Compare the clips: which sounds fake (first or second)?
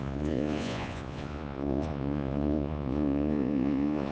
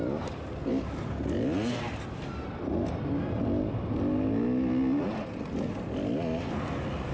first